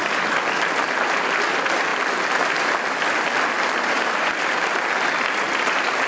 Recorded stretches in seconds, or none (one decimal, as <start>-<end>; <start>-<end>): 0.6-6.1